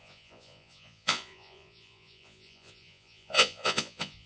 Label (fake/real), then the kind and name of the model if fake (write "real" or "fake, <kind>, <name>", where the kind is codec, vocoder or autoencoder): fake, vocoder, Vocos